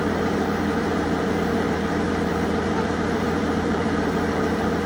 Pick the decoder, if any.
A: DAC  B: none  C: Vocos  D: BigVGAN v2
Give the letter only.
D